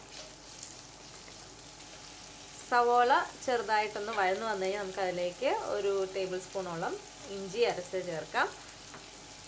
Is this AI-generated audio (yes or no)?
no